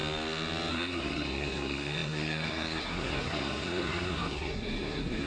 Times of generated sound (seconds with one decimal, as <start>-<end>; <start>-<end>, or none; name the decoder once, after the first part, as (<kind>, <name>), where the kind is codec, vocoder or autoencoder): 0.7-5.3 (codec, SNAC)